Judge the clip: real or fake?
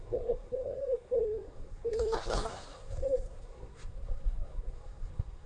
fake